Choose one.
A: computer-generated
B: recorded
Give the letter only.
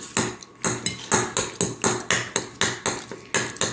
B